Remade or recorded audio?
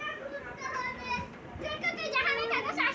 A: remade